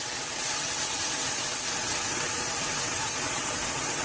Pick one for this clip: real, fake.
fake